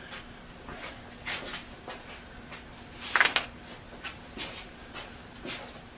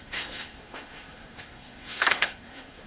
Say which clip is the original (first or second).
first